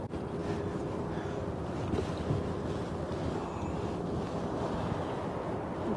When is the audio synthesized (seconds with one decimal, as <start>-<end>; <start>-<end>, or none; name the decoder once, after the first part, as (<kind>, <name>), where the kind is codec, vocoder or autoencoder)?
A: none